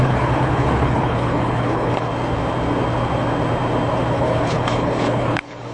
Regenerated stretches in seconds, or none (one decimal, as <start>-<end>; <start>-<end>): 0.0-2.1; 4.1-5.7